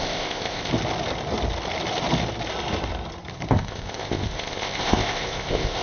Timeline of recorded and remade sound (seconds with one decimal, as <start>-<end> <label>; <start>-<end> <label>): 0.0-0.7 remade; 0.7-3.5 recorded; 3.5-5.8 remade